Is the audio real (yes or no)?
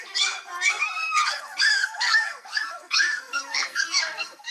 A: no